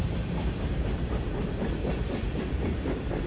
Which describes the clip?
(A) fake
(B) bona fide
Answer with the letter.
A